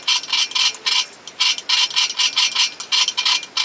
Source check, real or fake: real